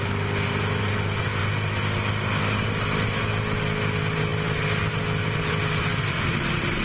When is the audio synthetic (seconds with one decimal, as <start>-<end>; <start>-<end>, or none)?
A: 5.9-6.8